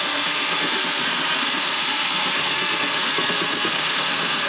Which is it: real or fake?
fake